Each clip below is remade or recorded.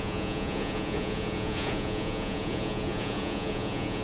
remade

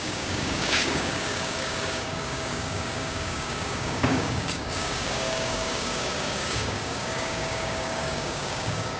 remade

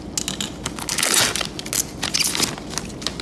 recorded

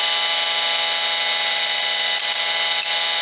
recorded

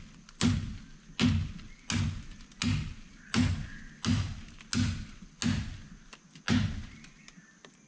recorded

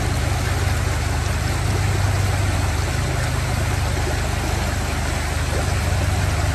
recorded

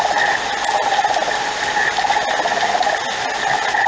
recorded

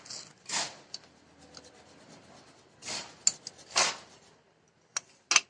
recorded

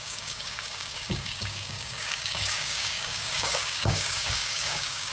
remade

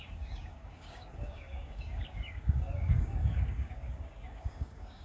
remade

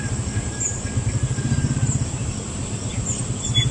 remade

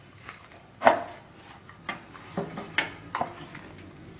recorded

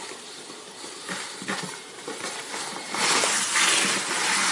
recorded